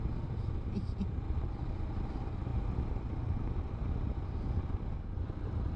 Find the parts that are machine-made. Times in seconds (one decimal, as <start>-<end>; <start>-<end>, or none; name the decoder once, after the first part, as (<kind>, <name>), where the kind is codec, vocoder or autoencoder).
none